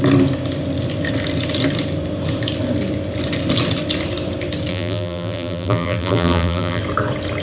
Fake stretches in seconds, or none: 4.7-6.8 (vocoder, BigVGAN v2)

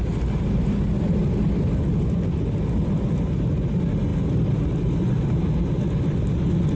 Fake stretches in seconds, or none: none